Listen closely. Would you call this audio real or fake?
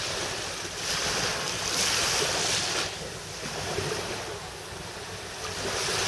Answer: real